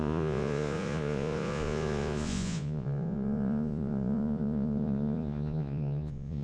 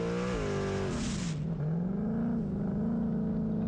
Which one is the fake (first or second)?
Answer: first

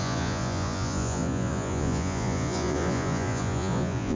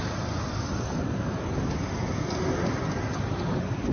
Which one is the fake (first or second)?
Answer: first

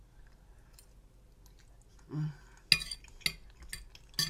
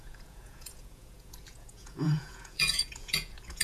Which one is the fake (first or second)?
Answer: second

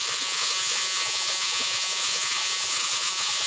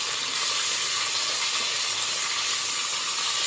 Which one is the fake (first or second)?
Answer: first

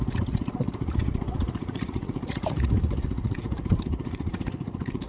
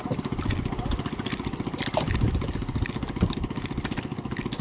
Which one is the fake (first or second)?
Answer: first